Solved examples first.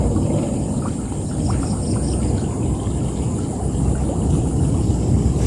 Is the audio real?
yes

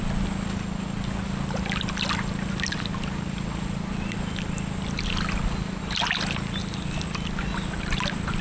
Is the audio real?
yes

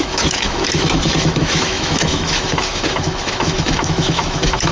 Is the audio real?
no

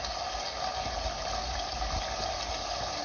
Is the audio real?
yes